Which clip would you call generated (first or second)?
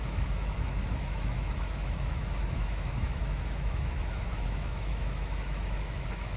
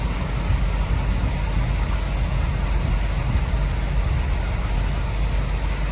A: first